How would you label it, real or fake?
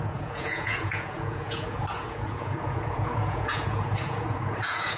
fake